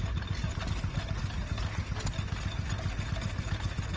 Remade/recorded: recorded